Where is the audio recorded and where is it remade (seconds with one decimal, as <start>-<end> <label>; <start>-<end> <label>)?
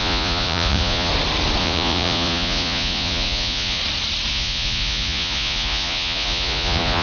0.0-1.1 remade; 1.1-1.6 recorded; 1.6-3.8 remade; 3.8-4.3 recorded; 4.3-7.0 remade